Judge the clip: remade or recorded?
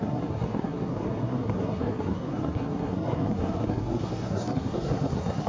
remade